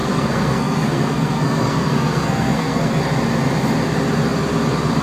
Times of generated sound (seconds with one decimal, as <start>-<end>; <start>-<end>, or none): 0.0-3.0